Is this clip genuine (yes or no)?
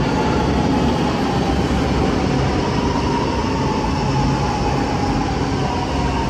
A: yes